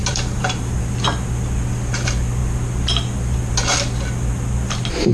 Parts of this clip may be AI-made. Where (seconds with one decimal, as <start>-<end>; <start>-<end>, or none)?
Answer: 0.0-0.8